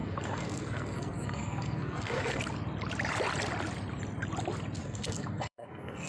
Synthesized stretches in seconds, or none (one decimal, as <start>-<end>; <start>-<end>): 0.0-2.4; 4.8-6.1